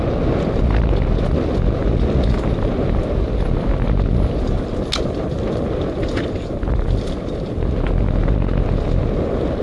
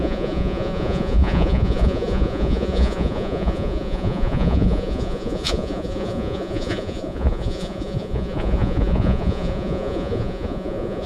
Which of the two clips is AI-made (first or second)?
second